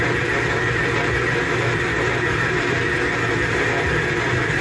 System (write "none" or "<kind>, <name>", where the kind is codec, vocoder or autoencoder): vocoder, BigVGAN v2